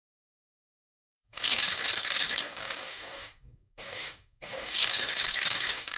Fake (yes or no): yes